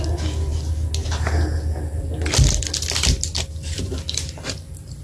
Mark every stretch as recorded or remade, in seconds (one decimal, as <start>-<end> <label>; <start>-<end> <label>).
0.0-3.3 recorded; 3.3-4.2 remade; 4.2-5.0 recorded